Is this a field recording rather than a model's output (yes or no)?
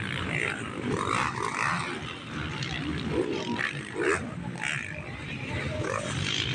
yes